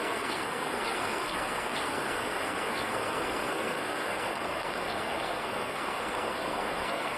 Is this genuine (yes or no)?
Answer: no